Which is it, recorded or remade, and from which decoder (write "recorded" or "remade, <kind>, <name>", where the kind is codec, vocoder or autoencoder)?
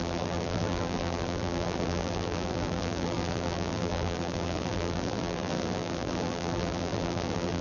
remade, vocoder, BigVGAN v2